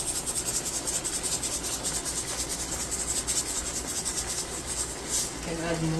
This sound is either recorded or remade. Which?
recorded